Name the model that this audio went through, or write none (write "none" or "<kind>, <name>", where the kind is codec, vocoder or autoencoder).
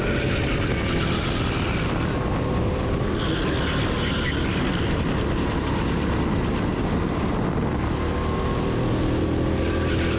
none